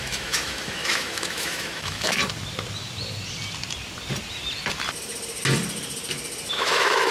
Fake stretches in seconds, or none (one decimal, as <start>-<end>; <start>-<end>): 0.0-2.2; 6.5-7.1